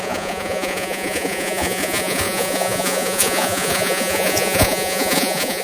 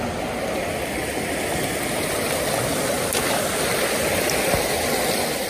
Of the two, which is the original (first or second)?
second